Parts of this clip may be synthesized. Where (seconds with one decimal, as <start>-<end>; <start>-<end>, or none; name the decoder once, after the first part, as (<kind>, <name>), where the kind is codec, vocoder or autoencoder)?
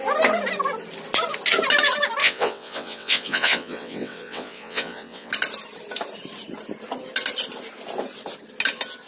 2.2-5.3 (vocoder, WaveNeXt)